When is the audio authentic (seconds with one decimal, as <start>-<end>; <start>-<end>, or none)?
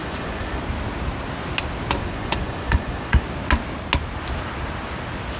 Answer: 0.6-2.0; 3.2-5.4